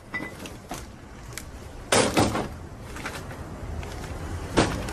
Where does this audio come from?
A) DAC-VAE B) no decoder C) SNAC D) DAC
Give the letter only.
B